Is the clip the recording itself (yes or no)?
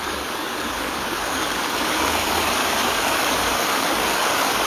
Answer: no